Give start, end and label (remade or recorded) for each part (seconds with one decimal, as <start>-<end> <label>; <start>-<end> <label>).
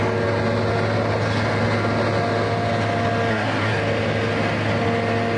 0.0-3.3 recorded; 3.3-3.8 remade; 3.8-5.4 recorded